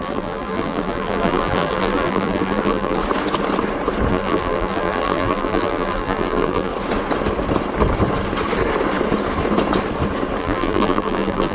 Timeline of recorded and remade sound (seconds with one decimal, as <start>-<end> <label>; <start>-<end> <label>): 0.0-3.0 remade; 3.0-4.1 recorded; 4.1-6.7 remade; 6.7-10.4 recorded; 10.4-11.5 remade